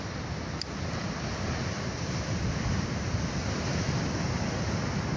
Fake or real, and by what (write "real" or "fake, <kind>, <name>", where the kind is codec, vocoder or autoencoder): real